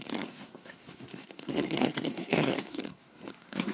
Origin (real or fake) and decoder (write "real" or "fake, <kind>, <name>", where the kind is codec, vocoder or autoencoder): fake, codec, SNAC